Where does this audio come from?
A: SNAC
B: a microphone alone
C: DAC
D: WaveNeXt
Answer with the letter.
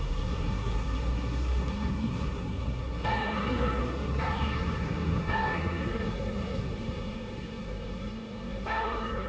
A